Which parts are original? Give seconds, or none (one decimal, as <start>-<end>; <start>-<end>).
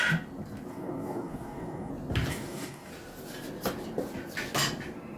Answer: 0.0-0.7; 1.9-2.3; 2.9-5.2